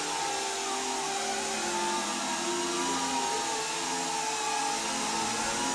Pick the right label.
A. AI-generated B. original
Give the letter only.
B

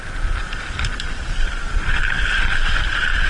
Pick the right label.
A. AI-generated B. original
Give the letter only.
A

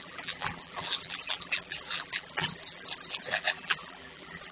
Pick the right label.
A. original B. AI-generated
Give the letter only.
B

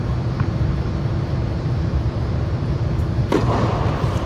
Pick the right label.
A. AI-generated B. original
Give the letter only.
A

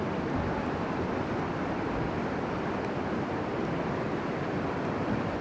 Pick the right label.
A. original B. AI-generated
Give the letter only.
B